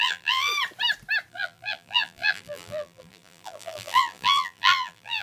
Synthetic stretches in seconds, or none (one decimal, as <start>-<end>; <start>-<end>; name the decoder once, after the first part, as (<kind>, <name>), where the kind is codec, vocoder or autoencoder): 0.0-0.5 (vocoder, BigVGAN v2); 1.3-5.2